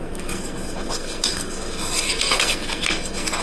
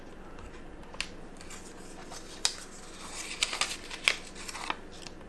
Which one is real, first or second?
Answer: second